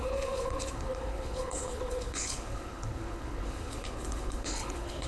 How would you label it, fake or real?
fake